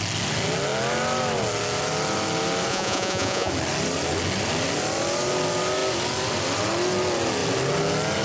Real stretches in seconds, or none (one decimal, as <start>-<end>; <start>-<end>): 0.0-2.7; 3.5-8.2